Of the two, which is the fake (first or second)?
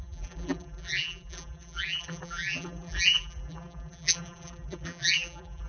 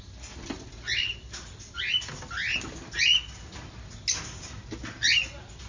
first